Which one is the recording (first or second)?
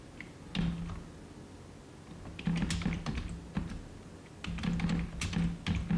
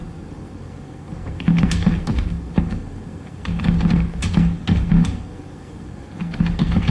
first